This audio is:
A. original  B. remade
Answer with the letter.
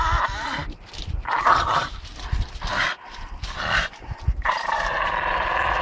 B